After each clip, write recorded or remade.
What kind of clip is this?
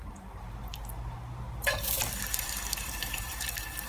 remade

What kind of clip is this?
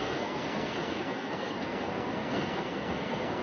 remade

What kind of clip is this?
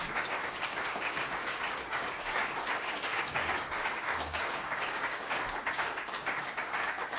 remade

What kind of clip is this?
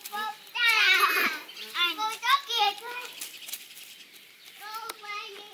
remade